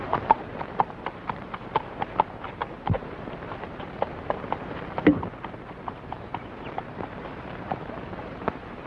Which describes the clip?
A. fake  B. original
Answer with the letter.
A